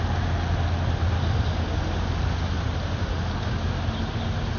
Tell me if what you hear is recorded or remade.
recorded